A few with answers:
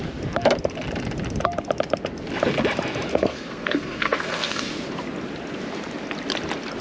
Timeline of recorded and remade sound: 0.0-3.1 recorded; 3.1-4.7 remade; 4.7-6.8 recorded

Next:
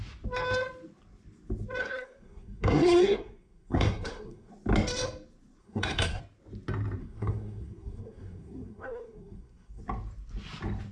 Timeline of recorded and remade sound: 0.0-1.8 recorded; 1.8-4.5 remade; 4.5-5.6 recorded; 5.6-6.2 remade; 6.2-7.0 recorded; 7.0-9.8 remade; 9.8-10.9 recorded

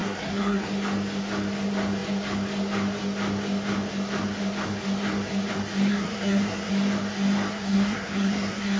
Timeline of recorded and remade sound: 0.0-0.7 remade; 0.7-5.9 recorded; 5.9-6.7 remade; 6.7-7.5 recorded; 7.5-8.8 remade

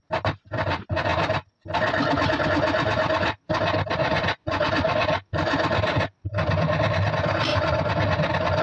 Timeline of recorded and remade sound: 0.0-4.0 recorded; 4.0-4.7 remade; 4.7-8.6 recorded

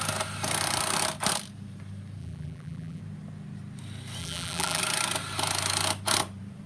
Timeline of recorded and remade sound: 0.0-2.2 recorded; 2.2-3.0 remade; 3.0-4.2 recorded; 4.2-4.8 remade; 4.8-6.7 recorded

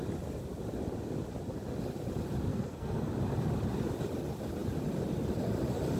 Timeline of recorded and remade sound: 0.0-2.5 recorded; 2.5-3.1 remade; 3.1-6.0 recorded

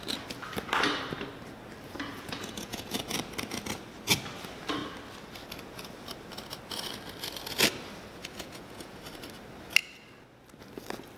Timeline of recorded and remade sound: 0.0-2.1 recorded; 2.1-3.0 remade; 3.0-8.2 recorded; 8.2-9.0 remade; 9.0-11.2 recorded

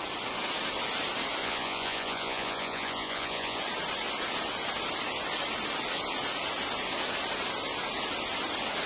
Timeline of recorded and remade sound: 0.0-1.4 recorded; 1.4-3.6 remade; 3.6-8.9 recorded